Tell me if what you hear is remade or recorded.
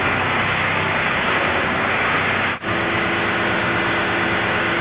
remade